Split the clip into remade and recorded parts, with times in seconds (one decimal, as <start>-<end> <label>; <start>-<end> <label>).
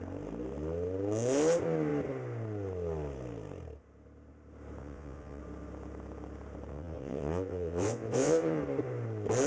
0.0-4.8 recorded; 4.8-5.4 remade; 5.4-6.7 recorded; 6.7-8.6 remade; 8.6-9.5 recorded